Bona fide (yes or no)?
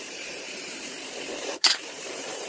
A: no